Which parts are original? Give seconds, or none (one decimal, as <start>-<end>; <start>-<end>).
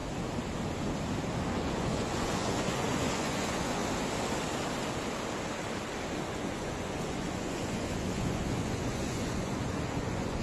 0.0-1.5; 3.8-6.3